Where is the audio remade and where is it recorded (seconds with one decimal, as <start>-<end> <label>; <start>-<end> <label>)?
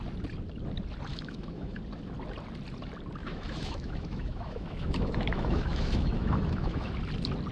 0.0-1.1 recorded; 1.1-1.8 remade; 1.8-3.2 recorded; 3.2-6.9 remade; 6.9-7.5 recorded